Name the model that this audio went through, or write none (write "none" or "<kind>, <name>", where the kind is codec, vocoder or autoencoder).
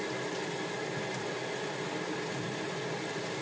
none